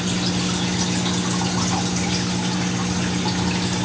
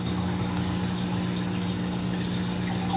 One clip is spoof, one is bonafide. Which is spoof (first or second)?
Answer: second